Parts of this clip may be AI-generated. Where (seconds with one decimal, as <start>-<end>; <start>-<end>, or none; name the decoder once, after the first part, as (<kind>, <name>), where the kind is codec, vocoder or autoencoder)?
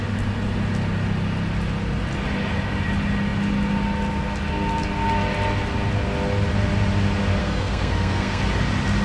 7.4-8.4 (codec, SNAC)